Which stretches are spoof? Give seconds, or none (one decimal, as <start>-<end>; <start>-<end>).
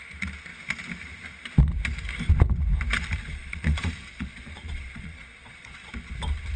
3.3-5.9